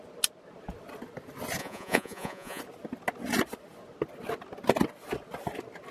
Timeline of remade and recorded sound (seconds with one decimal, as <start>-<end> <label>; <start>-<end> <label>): 0.0-1.6 recorded; 1.6-2.6 remade; 2.6-5.9 recorded